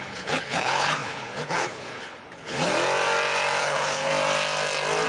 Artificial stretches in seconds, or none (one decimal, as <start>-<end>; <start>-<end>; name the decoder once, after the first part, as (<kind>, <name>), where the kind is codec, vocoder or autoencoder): 0.0-2.7 (codec, HILCodec); 3.6-4.1